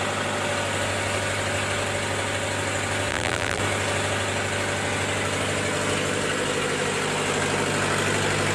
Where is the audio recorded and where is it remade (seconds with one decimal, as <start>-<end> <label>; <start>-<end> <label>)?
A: 0.0-3.1 recorded; 3.1-3.6 remade; 3.6-8.5 recorded